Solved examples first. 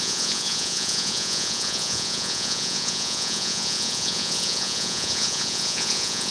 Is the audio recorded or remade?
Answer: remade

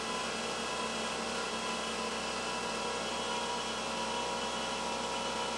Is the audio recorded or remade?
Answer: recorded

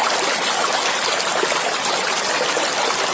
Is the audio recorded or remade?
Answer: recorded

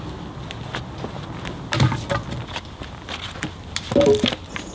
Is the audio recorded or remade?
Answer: recorded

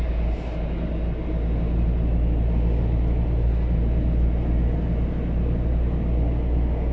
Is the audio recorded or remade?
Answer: recorded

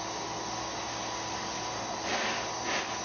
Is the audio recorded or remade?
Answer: recorded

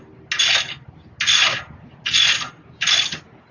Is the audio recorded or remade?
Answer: recorded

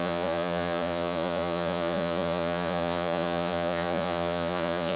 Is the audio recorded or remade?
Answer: remade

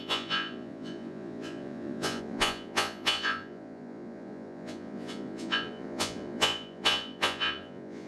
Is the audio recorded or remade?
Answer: remade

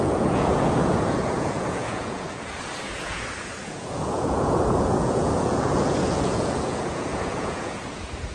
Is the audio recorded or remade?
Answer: remade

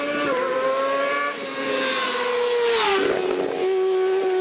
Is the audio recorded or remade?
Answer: recorded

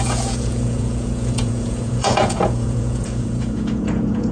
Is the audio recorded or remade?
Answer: remade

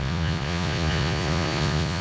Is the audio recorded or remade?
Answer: remade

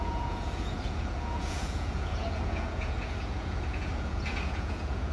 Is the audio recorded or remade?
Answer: remade